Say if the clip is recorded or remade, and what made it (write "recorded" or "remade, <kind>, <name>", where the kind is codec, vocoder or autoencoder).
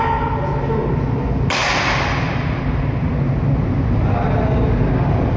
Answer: recorded